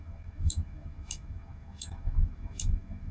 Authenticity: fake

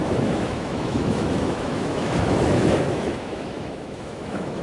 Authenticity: fake